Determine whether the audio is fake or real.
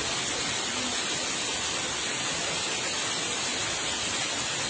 real